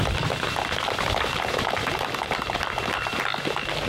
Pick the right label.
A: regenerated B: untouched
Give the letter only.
B